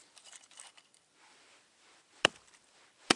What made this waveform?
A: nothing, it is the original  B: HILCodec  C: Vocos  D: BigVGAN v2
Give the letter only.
D